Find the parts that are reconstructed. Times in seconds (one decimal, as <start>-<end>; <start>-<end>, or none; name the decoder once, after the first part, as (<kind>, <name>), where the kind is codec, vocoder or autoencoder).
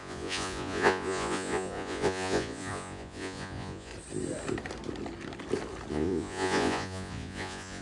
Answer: 0.0-3.9 (vocoder, Vocos); 5.9-7.8